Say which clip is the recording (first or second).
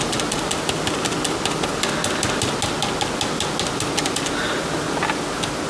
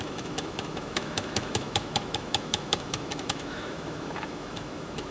first